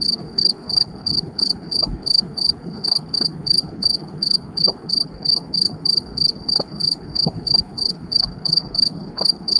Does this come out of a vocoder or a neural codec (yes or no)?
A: yes